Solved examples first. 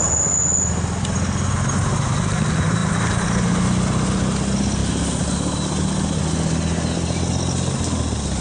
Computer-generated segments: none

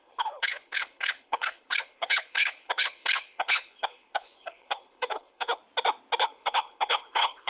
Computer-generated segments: 0.0-5.6 (codec, HILCodec); 6.2-7.5

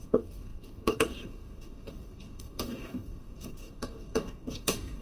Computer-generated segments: 0.0-5.0 (codec, DAC)

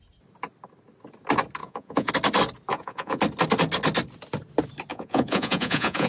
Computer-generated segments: 1.6-2.1 (vocoder, Vocos); 2.7-3.2; 4.9-6.1

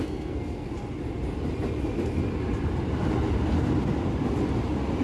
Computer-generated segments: 0.0-0.7 (codec, SNAC)

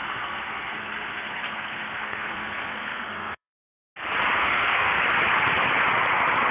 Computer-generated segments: 0.0-3.7 (codec, SNAC); 4.4-5.0

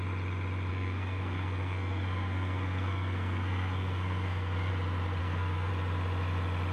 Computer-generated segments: 0.7-4.7 (codec, SNAC); 5.2-5.7